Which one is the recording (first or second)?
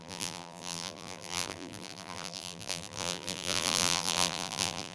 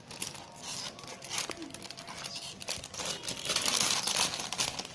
second